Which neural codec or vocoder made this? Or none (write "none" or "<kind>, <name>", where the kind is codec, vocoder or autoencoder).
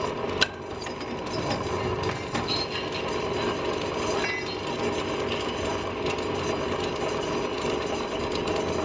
none